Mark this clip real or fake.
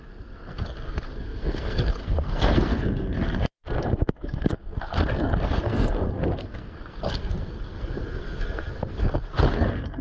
fake